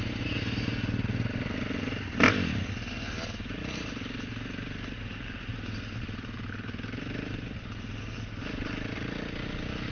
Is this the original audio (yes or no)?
yes